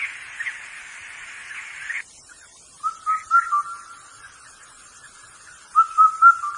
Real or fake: real